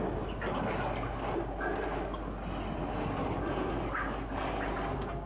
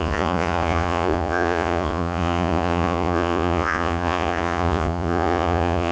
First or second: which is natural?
first